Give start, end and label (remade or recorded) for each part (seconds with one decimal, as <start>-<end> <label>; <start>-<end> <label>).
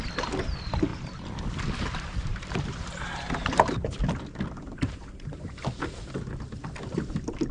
0.0-0.9 recorded; 0.9-1.5 remade; 1.5-2.3 recorded; 2.3-2.9 remade; 2.9-4.7 recorded; 4.7-5.5 remade; 5.5-7.5 recorded